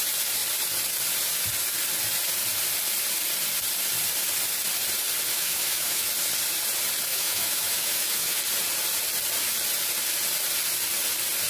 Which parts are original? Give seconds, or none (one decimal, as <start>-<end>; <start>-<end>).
0.0-5.3; 6.1-7.1; 8.4-11.5